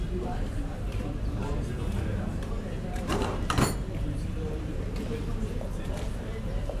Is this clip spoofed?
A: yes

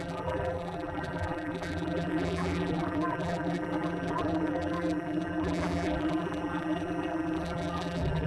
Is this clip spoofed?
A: yes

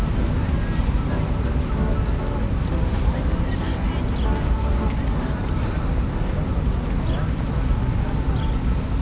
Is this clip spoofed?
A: no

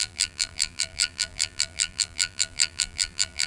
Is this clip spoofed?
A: yes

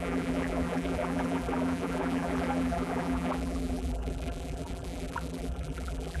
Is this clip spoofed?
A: yes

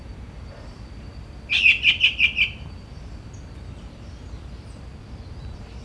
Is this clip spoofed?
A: yes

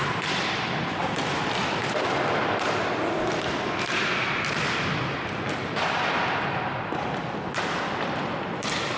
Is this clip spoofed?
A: yes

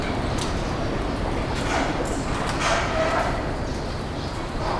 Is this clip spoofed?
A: no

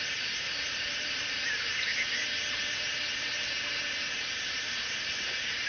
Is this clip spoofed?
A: no